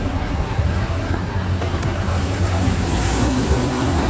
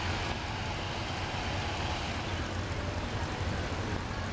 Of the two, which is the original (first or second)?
second